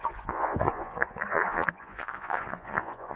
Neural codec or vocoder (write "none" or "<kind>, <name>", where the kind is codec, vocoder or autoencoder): vocoder, Vocos